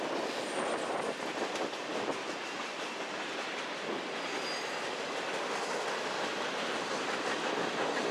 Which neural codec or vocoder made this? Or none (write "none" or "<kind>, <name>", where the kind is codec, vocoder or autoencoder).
none